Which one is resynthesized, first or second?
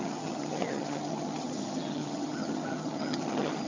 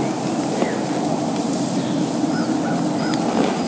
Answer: first